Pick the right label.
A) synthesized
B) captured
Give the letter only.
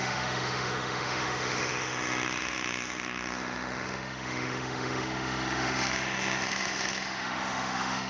A